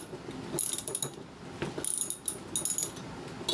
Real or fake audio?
real